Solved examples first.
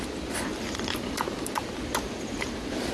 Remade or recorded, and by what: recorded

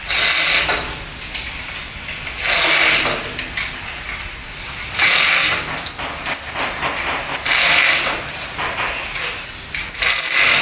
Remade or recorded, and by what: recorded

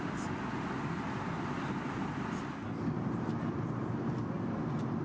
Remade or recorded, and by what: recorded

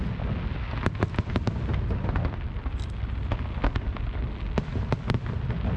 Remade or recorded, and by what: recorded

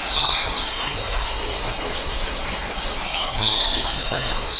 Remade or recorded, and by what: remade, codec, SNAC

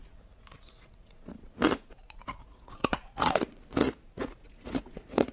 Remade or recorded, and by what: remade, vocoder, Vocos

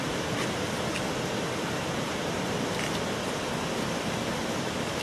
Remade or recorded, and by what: recorded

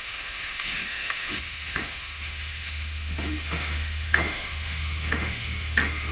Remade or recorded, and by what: remade, autoencoder, DAC-VAE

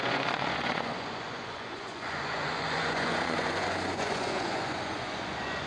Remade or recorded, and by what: remade, vocoder, Vocos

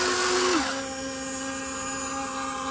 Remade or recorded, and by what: recorded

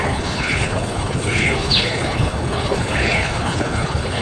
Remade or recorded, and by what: remade, codec, HILCodec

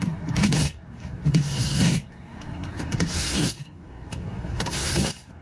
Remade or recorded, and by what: remade, codec, SNAC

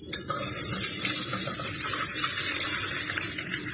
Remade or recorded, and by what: remade, vocoder, BigVGAN v2